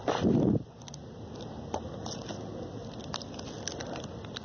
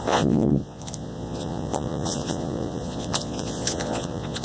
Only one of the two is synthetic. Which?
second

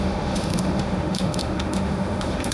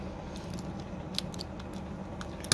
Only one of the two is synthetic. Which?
first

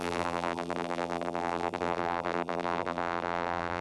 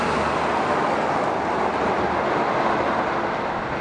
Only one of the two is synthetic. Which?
first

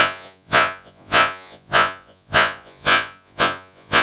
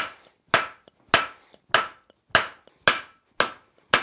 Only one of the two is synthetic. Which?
first